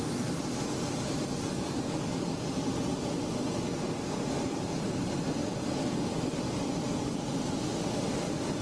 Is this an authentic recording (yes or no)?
yes